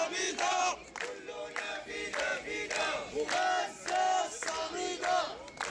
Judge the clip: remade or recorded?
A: recorded